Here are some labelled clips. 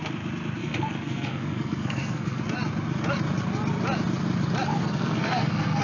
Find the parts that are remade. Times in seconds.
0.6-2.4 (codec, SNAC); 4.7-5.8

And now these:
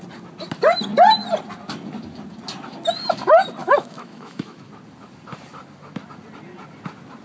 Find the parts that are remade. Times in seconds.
3.6-4.7 (autoencoder, DAC-VAE)

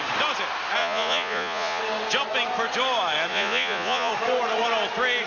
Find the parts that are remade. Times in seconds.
0.8-1.8 (vocoder, Vocos); 3.3-4.1

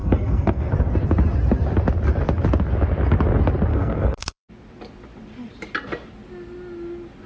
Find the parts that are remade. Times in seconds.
0.0-0.7 (codec, SNAC); 3.7-4.5

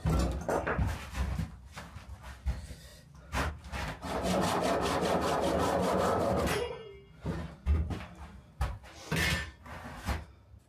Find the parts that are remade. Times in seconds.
2.9-3.5 (vocoder, BigVGAN v2)

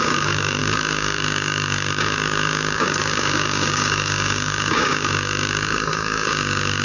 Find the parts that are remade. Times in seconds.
0.0-6.8 (codec, DAC)